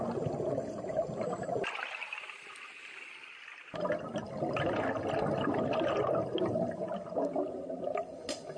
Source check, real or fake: real